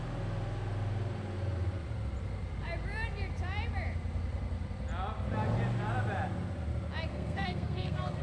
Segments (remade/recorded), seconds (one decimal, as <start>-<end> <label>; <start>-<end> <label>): 0.0-7.1 recorded; 7.1-8.2 remade